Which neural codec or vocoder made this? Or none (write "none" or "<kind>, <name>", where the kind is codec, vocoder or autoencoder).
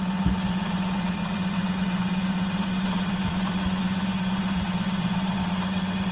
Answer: vocoder, Vocos